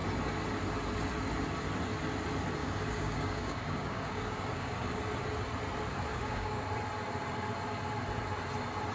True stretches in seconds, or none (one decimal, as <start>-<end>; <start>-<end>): 0.0-2.6; 5.0-6.1; 6.6-8.9